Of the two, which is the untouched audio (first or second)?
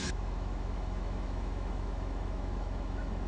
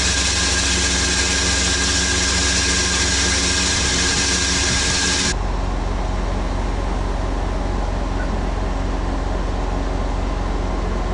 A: second